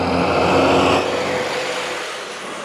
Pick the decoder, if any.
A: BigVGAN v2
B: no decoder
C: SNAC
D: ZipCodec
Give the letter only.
B